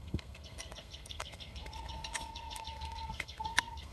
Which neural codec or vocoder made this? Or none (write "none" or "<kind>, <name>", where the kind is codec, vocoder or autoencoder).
codec, SNAC